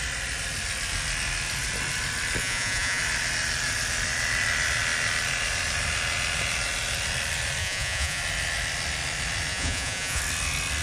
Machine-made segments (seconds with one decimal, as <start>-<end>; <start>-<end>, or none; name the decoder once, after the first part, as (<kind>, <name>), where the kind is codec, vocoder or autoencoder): 2.4-3.0 (vocoder, Vocos); 7.6-8.2; 9.5-10.2